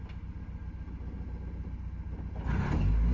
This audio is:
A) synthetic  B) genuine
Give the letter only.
B